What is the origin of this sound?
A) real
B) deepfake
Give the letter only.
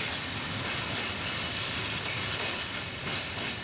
A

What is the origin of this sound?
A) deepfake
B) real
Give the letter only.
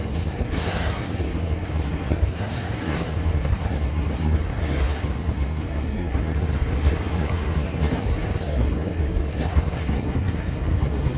A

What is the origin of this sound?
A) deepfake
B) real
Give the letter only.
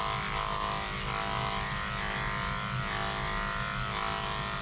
B